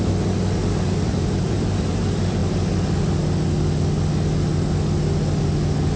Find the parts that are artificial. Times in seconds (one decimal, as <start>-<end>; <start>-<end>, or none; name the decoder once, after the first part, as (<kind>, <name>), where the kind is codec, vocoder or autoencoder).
0.6-2.0 (vocoder, BigVGAN v2)